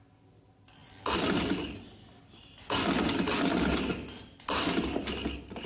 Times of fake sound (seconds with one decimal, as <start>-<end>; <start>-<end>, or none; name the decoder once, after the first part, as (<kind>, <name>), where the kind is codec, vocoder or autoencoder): none